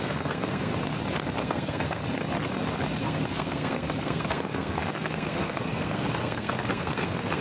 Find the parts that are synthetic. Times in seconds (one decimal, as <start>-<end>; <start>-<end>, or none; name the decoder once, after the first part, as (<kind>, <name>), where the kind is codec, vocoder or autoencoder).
0.0-0.7 (codec, SNAC); 1.4-2.0; 3.0-7.4